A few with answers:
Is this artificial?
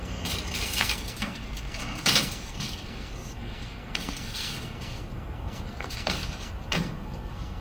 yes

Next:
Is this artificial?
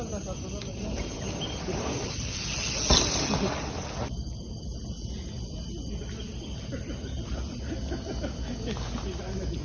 no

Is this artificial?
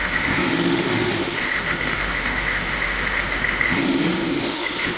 yes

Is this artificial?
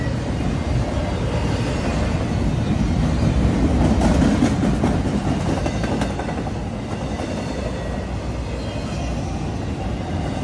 no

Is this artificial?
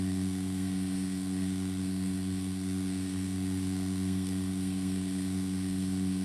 yes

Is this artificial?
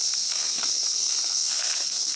yes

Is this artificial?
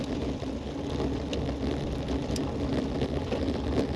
no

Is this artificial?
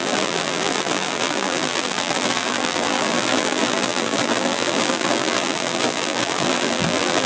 yes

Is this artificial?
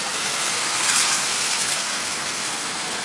yes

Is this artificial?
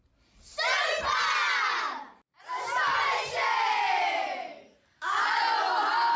no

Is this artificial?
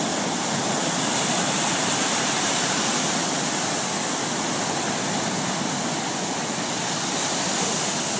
no